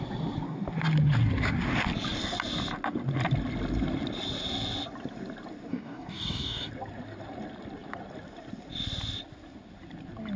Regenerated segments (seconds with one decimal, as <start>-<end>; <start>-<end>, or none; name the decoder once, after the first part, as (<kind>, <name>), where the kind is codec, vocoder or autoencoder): 5.7-6.7 (codec, DAC)